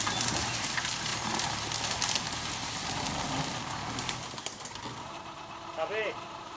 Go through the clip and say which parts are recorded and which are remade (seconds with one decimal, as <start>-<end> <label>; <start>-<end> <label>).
0.0-5.7 recorded; 5.7-6.6 remade